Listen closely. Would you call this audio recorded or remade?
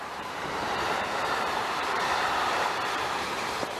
remade